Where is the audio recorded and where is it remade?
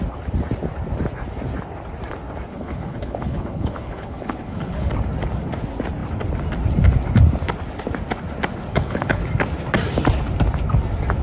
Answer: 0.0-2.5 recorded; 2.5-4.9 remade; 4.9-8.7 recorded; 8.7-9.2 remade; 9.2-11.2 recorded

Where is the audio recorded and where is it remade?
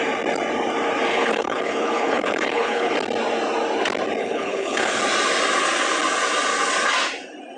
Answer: 0.0-1.1 recorded; 1.1-2.9 remade; 2.9-4.2 recorded; 4.2-5.0 remade; 5.0-7.6 recorded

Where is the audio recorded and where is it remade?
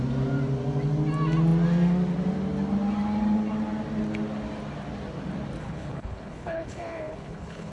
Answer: 0.0-5.6 recorded; 5.6-7.7 remade